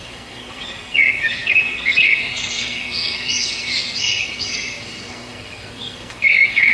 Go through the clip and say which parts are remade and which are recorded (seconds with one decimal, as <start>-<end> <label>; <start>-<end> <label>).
0.0-6.7 remade